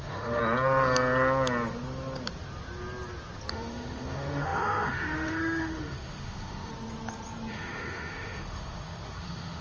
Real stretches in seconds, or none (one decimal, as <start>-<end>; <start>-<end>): 0.4-3.5; 6.7-7.5